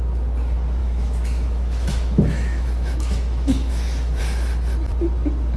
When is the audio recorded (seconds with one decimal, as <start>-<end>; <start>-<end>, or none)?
0.0-0.8; 4.2-5.6